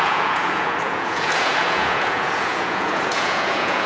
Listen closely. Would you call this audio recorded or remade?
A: remade